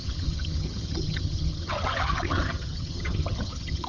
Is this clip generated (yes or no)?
yes